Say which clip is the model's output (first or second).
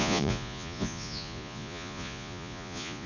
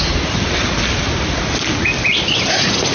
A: first